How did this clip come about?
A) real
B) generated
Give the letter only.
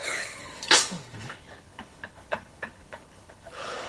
B